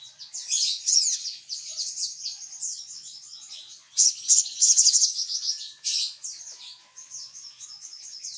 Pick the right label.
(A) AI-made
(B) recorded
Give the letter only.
A